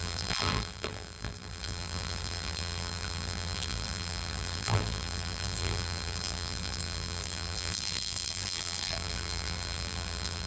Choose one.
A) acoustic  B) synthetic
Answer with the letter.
B